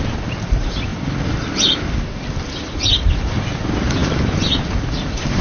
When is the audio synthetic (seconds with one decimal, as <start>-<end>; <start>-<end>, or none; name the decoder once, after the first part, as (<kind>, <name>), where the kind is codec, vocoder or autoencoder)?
none